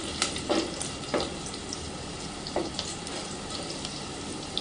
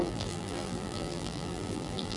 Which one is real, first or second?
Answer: first